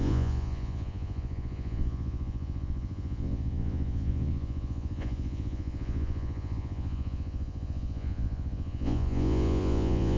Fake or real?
fake